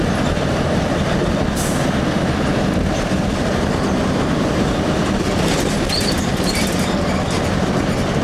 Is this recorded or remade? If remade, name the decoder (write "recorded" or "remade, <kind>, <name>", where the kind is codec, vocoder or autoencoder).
remade, vocoder, BigVGAN v2